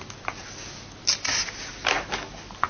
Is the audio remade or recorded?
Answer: recorded